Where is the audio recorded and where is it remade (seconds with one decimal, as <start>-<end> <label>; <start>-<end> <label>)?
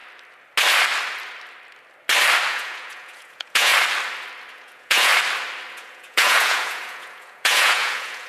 0.0-2.5 recorded; 2.5-3.7 remade; 3.7-4.5 recorded; 4.5-5.1 remade; 5.1-5.7 recorded; 5.7-8.3 remade